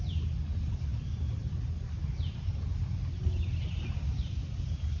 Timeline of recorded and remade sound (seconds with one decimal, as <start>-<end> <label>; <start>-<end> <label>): 0.0-5.0 recorded